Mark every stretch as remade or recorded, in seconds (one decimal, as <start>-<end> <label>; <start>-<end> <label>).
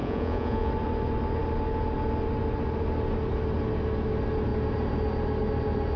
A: 0.0-0.7 remade; 0.7-6.0 recorded